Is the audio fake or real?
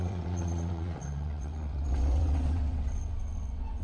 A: fake